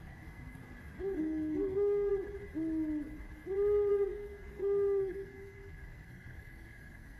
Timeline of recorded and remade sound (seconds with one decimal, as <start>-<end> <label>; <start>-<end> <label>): 0.0-0.6 remade; 0.6-1.2 recorded; 1.2-2.1 remade; 2.1-3.9 recorded; 3.9-7.2 remade